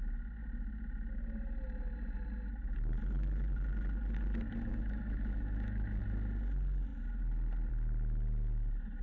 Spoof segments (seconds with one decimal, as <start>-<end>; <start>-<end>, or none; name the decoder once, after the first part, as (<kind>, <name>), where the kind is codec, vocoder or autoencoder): 4.7-6.0 (autoencoder, DAC-VAE)